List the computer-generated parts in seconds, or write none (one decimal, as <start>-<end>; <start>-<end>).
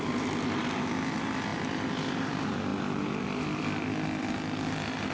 none